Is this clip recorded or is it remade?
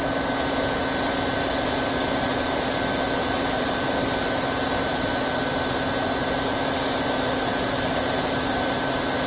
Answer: recorded